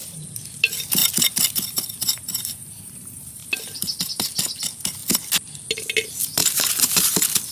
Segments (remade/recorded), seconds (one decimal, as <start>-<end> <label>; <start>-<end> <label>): 0.0-6.4 recorded; 6.4-6.9 remade; 6.9-7.5 recorded